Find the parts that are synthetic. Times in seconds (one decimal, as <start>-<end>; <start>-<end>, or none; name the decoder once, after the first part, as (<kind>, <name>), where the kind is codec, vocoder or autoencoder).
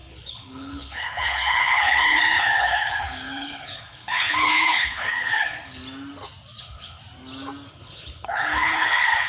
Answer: 0.0-5.8 (codec, HILCodec); 6.6-7.0; 7.7-9.3